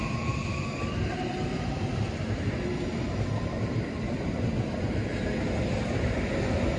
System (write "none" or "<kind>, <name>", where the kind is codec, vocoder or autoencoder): none